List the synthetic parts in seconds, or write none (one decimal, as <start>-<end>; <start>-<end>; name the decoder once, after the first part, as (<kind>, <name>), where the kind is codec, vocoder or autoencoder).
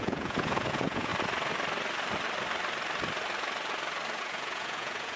0.0-1.1 (vocoder, Vocos); 4.2-5.2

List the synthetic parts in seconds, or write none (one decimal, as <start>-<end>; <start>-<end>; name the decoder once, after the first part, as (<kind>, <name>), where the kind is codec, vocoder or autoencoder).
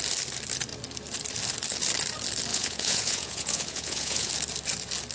2.5-4.3 (vocoder, Vocos)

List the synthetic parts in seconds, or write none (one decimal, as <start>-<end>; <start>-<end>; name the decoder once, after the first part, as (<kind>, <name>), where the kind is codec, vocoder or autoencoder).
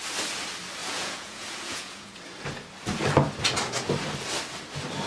0.8-2.2 (vocoder, Vocos)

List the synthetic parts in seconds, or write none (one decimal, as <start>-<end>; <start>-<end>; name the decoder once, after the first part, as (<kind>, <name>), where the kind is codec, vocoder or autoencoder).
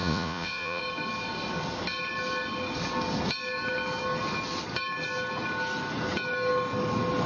0.0-0.8 (vocoder, Vocos)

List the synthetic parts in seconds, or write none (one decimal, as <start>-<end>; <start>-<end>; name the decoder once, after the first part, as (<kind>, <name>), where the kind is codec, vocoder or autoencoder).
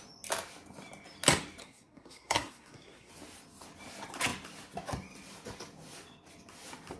1.6-3.1 (codec, SNAC)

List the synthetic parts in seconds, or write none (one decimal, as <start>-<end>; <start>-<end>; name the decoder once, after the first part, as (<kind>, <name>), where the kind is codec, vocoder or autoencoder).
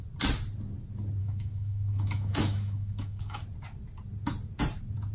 1.2-3.4 (autoencoder, DAC-VAE)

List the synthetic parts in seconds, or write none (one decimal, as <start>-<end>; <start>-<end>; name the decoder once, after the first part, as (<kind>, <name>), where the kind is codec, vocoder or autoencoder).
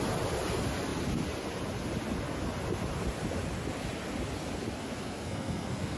4.8-6.0 (codec, SNAC)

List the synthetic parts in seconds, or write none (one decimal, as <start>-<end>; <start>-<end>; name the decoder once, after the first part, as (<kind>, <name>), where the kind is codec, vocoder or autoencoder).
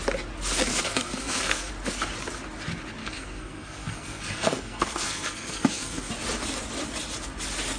0.7-1.7 (codec, SNAC); 3.0-6.1